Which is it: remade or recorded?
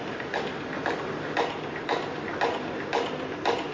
recorded